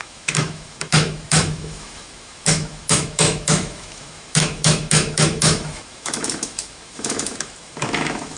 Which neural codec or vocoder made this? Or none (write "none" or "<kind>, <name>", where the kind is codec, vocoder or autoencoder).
autoencoder, DAC-VAE